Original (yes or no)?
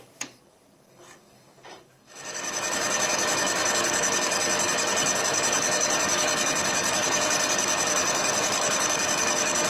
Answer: no